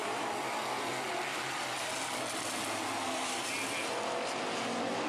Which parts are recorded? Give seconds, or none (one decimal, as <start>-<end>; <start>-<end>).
0.9-1.3; 2.6-5.1